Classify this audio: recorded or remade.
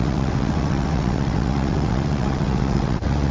remade